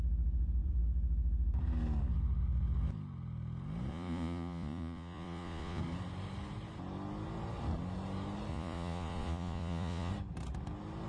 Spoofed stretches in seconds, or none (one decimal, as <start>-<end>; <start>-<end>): 3.9-5.8; 8.5-10.1